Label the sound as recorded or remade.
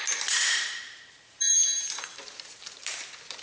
remade